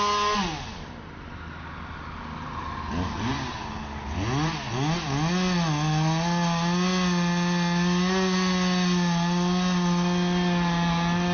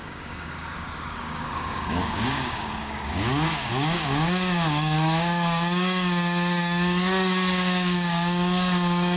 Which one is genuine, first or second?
first